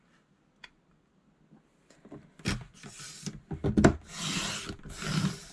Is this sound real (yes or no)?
yes